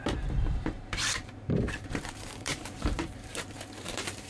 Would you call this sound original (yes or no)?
no